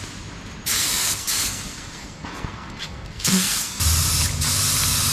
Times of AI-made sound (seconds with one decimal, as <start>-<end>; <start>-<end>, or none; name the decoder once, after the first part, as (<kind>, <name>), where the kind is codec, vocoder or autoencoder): 0.7-3.8 (codec, SNAC)